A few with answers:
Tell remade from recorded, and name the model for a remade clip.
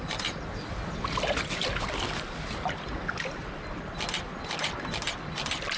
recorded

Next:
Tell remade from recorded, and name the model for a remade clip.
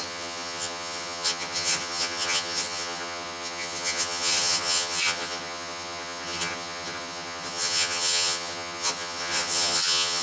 remade, vocoder, HiFi-GAN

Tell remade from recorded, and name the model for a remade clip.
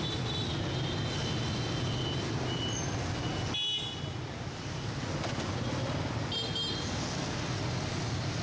recorded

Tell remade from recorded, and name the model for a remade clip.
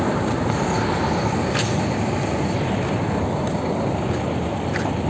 recorded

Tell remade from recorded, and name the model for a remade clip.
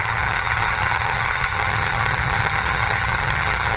remade, vocoder, HiFi-GAN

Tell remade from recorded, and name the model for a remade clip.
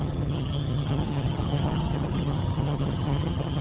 remade, vocoder, HiFi-GAN